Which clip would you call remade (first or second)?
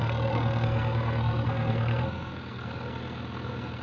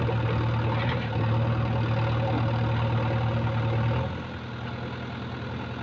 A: first